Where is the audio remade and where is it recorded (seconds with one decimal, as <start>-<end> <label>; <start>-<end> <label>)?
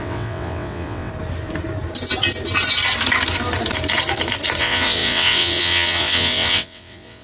0.0-1.1 remade; 1.1-4.6 recorded; 4.6-7.2 remade